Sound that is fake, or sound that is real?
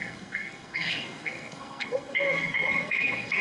fake